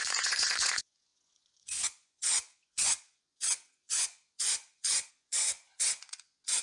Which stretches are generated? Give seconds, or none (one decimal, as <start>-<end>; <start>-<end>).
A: 0.0-6.6